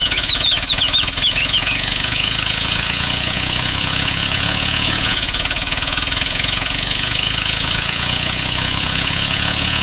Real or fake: fake